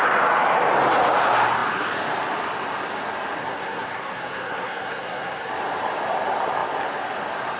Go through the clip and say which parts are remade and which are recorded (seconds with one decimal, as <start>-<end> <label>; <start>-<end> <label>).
0.0-3.4 recorded; 3.4-5.5 remade; 5.5-7.6 recorded